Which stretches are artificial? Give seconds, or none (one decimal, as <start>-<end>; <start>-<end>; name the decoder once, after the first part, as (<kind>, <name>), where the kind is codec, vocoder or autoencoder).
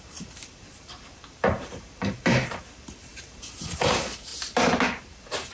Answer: 0.0-4.3 (vocoder, BigVGAN v2); 5.0-5.5